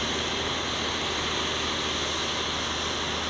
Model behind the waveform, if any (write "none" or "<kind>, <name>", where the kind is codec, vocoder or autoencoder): none